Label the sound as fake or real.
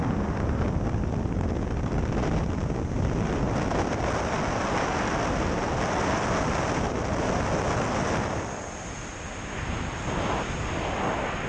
real